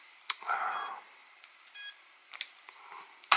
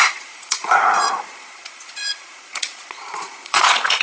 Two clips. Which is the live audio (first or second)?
first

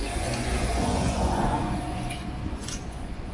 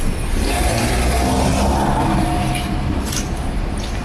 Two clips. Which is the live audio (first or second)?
second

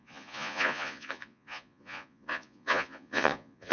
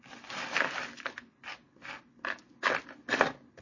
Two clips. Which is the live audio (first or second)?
second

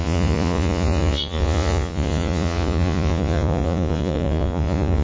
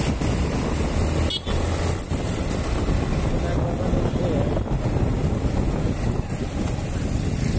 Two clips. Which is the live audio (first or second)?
second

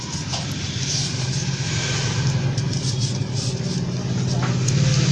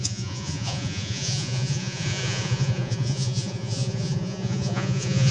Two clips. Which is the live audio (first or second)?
first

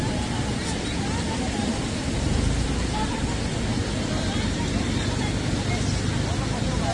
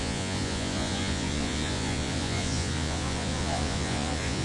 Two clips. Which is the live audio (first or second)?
first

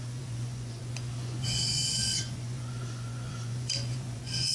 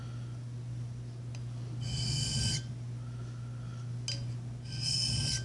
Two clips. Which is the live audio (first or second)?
second